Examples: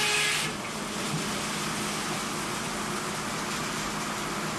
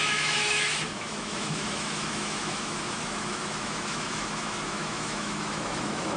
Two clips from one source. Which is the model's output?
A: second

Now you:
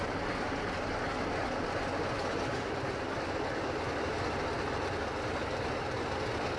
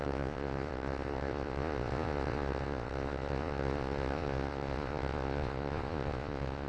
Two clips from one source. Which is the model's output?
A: second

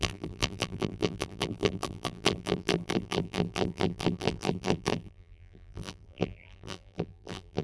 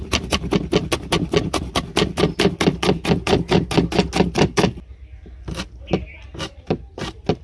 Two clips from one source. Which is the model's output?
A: first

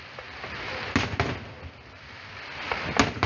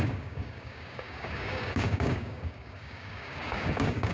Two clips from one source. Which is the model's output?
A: second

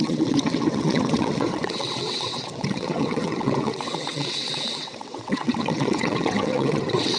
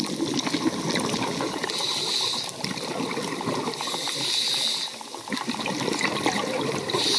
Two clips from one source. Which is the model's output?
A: first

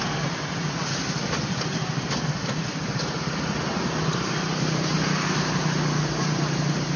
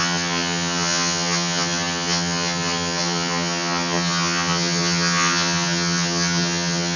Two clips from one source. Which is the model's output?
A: second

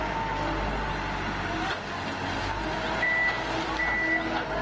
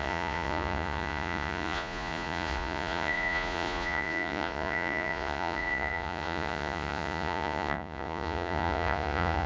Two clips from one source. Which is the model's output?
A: second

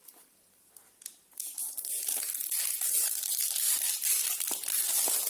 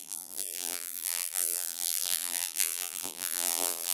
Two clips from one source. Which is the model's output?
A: second